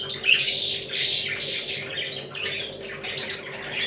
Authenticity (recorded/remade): recorded